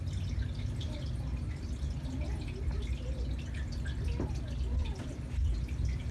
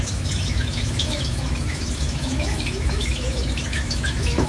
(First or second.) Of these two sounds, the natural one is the first